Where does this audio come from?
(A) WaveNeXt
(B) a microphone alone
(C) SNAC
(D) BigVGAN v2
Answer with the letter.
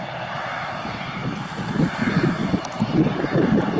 B